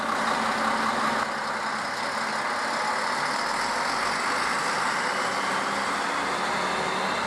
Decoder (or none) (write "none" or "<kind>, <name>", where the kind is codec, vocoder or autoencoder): none